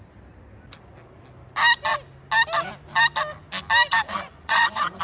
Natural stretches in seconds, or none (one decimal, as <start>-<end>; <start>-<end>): 0.0-4.1

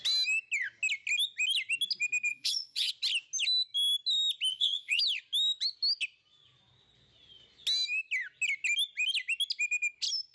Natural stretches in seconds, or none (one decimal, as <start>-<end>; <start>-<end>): 0.0-2.3; 2.9-4.5; 5.0-10.3